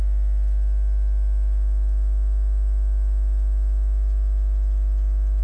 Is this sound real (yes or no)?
yes